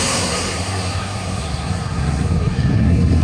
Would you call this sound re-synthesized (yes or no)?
yes